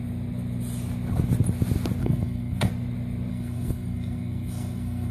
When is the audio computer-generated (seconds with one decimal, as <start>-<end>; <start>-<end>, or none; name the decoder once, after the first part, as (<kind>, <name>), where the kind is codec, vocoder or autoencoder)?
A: 2.0-2.7 (codec, SNAC); 3.3-5.1